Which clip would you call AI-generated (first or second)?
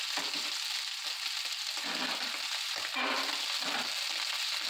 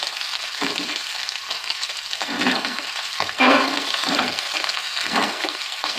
second